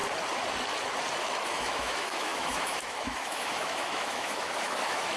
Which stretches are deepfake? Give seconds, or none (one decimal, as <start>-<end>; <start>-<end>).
1.2-5.2